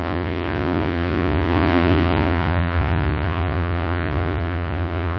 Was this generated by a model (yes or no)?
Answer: yes